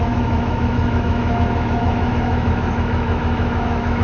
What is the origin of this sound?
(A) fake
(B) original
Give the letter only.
A